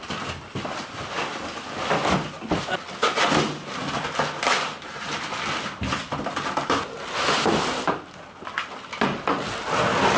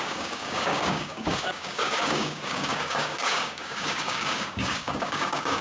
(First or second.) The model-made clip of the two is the second